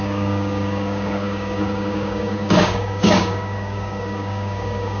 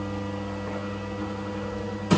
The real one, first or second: second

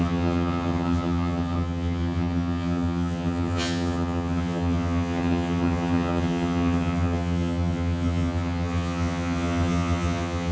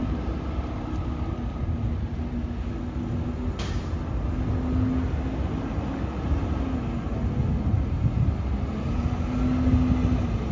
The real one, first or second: second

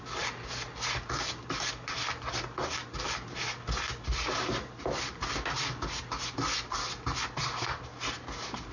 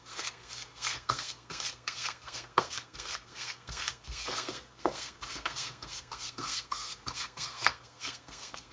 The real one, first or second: first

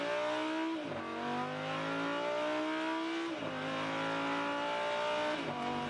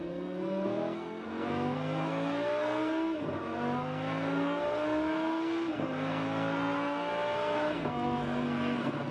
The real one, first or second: first